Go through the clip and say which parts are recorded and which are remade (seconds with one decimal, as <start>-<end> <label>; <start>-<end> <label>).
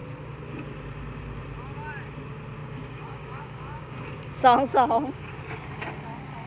0.0-2.6 recorded; 2.6-4.0 remade; 4.0-4.7 recorded; 4.7-5.3 remade; 5.3-6.5 recorded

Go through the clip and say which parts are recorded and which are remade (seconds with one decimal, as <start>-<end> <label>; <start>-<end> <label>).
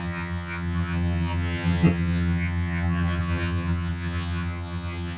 0.0-5.2 remade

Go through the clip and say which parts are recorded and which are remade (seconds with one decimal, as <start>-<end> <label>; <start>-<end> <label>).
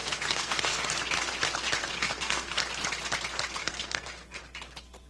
0.0-0.8 remade; 0.8-1.8 recorded; 1.8-2.6 remade; 2.6-3.6 recorded; 3.6-4.4 remade; 4.4-5.1 recorded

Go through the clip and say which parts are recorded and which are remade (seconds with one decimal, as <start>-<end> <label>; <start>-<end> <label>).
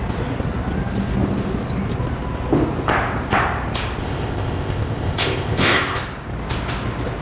0.0-4.0 recorded; 4.0-6.0 remade; 6.0-7.2 recorded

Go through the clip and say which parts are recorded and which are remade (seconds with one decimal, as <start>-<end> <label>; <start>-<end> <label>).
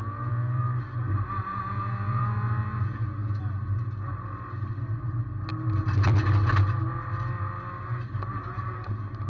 0.0-0.6 remade; 0.6-1.5 recorded; 1.5-3.4 remade; 3.4-9.3 recorded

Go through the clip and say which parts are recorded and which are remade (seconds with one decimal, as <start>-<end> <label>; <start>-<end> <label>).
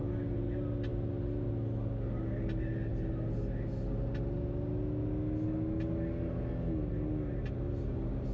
0.0-8.3 recorded